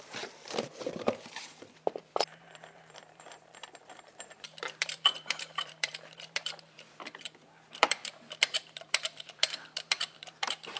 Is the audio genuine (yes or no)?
no